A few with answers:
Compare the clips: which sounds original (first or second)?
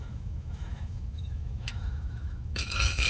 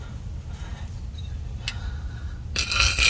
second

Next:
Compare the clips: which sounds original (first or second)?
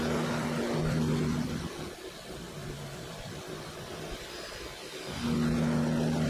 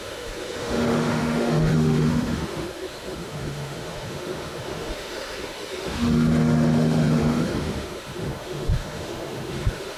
first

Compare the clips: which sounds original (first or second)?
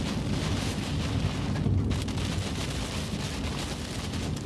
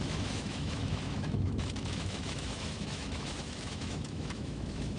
first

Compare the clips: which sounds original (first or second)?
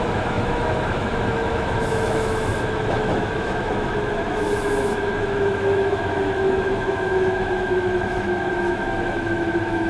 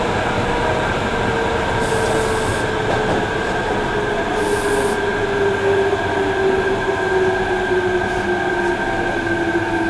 second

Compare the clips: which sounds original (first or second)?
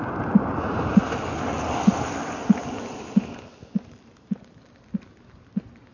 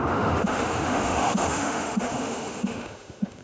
first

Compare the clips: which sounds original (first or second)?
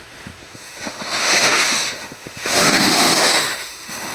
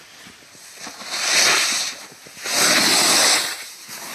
second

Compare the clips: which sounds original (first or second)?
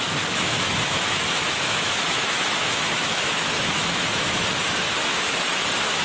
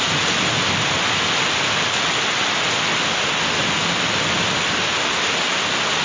second